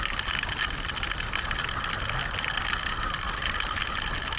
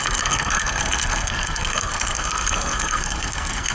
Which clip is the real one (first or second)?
first